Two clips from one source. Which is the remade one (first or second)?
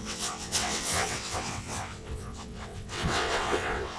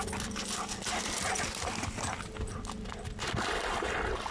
first